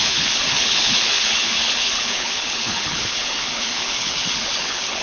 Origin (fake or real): fake